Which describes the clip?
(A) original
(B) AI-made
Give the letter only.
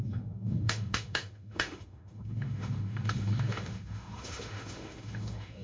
B